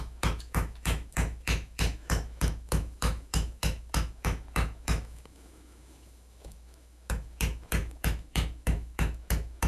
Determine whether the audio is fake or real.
fake